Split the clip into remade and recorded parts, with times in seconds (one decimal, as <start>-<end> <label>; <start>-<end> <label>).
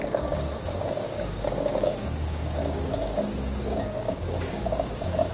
0.0-5.3 remade